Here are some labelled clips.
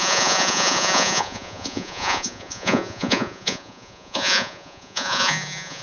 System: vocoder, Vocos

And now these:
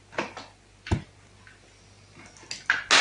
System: none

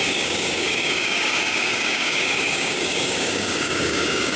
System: codec, DAC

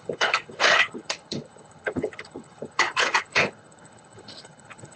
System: codec, HILCodec